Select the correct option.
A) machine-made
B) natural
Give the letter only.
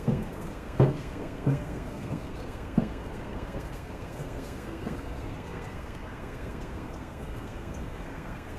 A